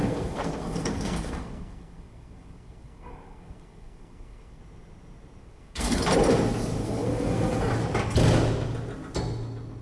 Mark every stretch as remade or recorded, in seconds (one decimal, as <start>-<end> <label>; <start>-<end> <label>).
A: 0.0-4.6 remade; 4.6-5.4 recorded; 5.4-6.0 remade; 6.0-6.8 recorded; 6.8-7.7 remade; 7.7-9.8 recorded